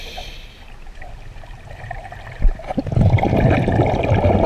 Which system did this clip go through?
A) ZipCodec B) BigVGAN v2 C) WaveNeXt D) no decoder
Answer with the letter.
D